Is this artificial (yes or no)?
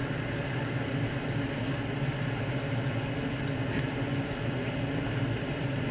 no